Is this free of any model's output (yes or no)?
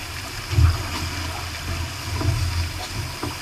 yes